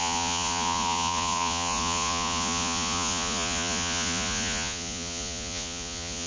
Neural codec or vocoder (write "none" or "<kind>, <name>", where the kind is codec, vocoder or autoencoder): vocoder, Vocos